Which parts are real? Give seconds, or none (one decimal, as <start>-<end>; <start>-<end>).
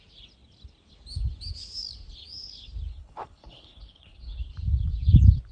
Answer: 0.0-2.9; 4.4-5.5